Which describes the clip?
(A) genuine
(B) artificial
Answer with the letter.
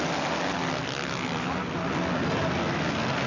A